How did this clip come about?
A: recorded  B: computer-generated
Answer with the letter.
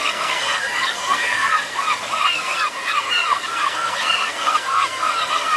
B